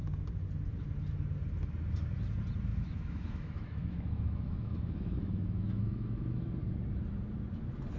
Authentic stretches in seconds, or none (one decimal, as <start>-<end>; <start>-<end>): 0.0-2.7; 6.5-8.0